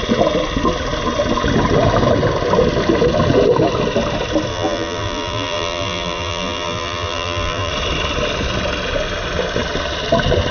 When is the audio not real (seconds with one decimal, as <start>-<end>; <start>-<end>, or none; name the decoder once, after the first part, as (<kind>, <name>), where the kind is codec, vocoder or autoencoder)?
4.5-7.7 (vocoder, BigVGAN v2)